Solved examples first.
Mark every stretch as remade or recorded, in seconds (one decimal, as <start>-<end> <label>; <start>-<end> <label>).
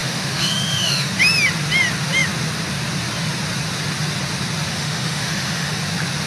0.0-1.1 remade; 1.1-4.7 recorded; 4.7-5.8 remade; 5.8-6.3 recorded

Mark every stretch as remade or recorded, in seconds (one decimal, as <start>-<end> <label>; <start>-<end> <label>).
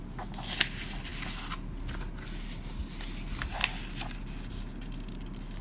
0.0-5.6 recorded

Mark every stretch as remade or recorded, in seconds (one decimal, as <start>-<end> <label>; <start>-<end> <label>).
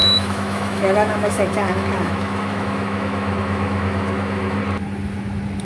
0.0-4.6 remade; 4.6-5.6 recorded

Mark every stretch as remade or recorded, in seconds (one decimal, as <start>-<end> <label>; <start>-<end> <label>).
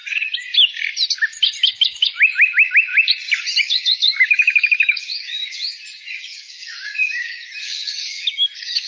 0.0-1.7 recorded; 1.7-2.9 remade; 2.9-3.6 recorded; 3.6-5.6 remade; 5.6-6.2 recorded; 6.2-8.9 remade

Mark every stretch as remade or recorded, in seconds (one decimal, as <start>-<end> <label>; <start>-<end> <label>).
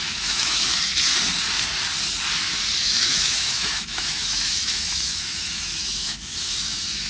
0.0-0.7 remade; 0.7-2.8 recorded; 2.8-7.1 remade